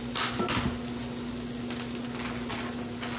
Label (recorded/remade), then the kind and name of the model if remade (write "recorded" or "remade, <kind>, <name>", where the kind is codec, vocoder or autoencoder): recorded